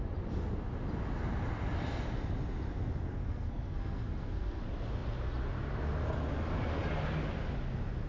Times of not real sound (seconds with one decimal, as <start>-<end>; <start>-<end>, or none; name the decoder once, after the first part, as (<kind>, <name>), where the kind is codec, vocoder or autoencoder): 3.1-4.6 (codec, SNAC)